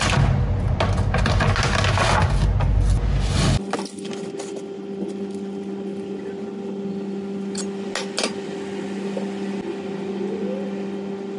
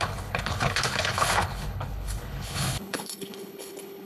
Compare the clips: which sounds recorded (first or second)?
first